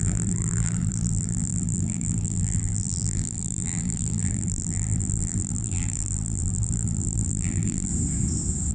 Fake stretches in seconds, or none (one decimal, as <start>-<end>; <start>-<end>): 0.0-7.9